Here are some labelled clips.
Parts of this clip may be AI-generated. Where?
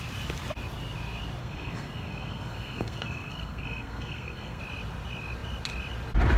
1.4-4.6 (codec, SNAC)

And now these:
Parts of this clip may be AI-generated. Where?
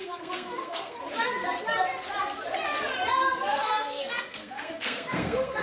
0.0-1.0 (codec, SNAC); 3.4-5.6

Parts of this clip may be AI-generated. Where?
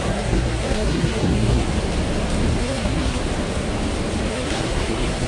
0.0-1.7 (codec, SNAC); 2.6-3.2; 4.3-5.3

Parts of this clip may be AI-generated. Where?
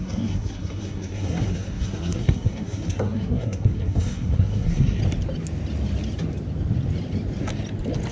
0.0-5.0 (codec, SNAC)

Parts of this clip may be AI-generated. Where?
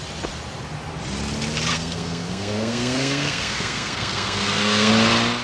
1.7-4.9 (codec, SNAC)